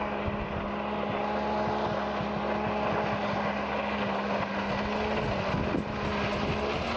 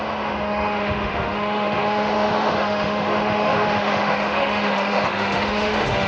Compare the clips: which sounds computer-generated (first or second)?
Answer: second